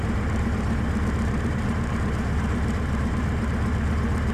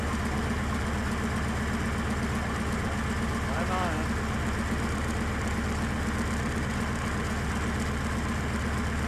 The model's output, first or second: first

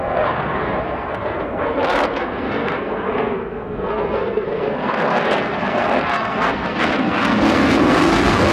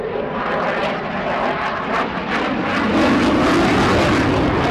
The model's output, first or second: first